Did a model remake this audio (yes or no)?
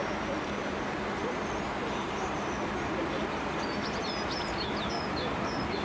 no